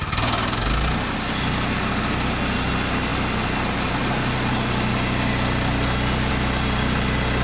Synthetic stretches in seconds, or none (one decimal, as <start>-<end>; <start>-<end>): none